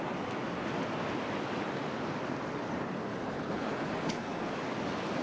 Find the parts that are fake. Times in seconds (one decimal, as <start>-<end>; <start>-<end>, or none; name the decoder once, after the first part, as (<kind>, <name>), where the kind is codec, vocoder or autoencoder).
3.1-4.6 (codec, HILCodec)